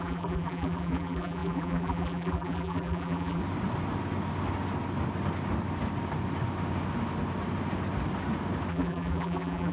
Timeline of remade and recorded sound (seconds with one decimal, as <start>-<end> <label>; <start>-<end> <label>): 0.0-3.4 remade; 3.4-8.7 recorded; 8.7-9.7 remade